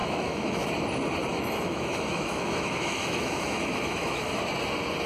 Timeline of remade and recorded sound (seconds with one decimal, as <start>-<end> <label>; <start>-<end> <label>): 0.0-0.7 remade; 0.7-1.3 recorded; 1.3-4.4 remade; 4.4-5.1 recorded